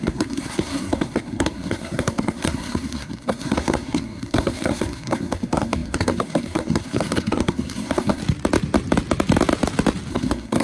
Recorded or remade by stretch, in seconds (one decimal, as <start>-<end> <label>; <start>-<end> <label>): 0.0-8.2 remade; 8.2-10.1 recorded; 10.1-10.6 remade